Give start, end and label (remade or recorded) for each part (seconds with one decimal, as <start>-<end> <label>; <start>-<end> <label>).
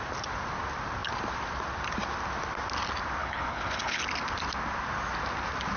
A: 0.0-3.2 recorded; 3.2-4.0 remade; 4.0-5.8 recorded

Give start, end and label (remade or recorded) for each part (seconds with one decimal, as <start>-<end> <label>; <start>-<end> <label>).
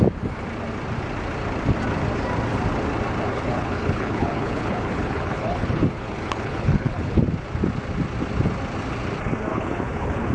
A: 0.0-3.3 recorded; 3.3-7.2 remade; 7.2-9.5 recorded; 9.5-10.3 remade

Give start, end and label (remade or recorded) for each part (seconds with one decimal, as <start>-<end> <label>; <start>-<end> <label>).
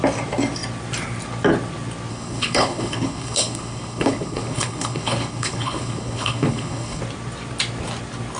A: 0.0-2.1 recorded; 2.1-7.0 remade; 7.0-8.4 recorded